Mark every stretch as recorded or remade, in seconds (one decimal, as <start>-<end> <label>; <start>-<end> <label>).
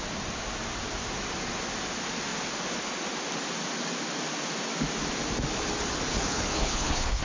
0.0-6.1 recorded; 6.1-7.2 remade